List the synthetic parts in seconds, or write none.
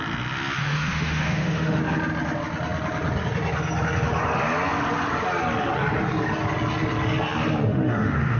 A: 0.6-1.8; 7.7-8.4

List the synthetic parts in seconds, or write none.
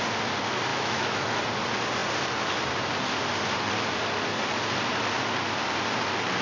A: 0.7-1.4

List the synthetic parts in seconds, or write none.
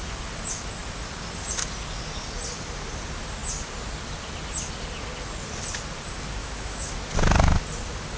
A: 6.4-6.9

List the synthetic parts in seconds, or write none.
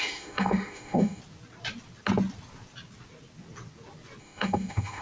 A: 0.0-1.2; 4.2-5.0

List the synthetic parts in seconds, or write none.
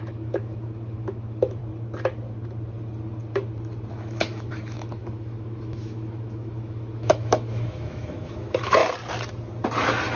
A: 0.0-1.6; 3.9-8.8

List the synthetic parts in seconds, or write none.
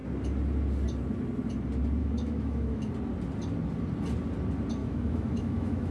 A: 2.0-2.9; 4.8-5.9